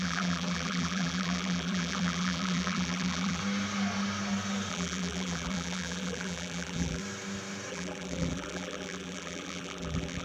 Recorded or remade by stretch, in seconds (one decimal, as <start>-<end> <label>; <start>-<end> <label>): 0.0-3.4 remade; 3.4-4.7 recorded; 4.7-7.0 remade; 7.0-7.7 recorded; 7.7-10.2 remade

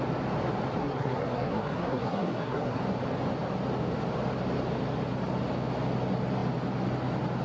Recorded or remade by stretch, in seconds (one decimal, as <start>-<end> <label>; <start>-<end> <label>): 0.0-0.8 recorded; 0.8-2.8 remade; 2.8-7.4 recorded

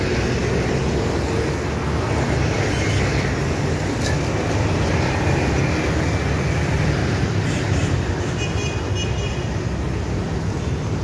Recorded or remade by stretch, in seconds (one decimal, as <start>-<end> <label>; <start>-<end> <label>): 0.0-7.0 recorded; 7.0-8.3 remade; 8.3-11.0 recorded